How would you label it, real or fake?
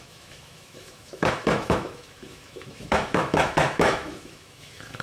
fake